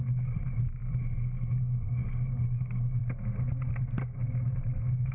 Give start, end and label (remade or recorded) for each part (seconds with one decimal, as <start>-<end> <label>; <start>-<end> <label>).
0.0-5.1 recorded